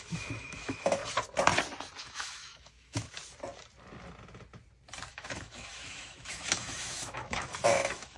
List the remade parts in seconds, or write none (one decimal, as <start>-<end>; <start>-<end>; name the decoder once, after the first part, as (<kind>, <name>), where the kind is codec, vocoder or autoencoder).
0.0-1.0 (autoencoder, DAC-VAE); 2.0-3.2; 5.1-8.2